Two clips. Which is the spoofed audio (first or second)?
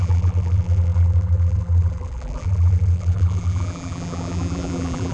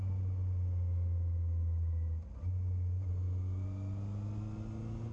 first